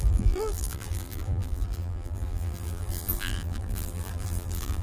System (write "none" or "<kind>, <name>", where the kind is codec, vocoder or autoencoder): vocoder, BigVGAN v2